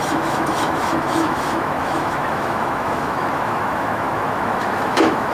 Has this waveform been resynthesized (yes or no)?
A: yes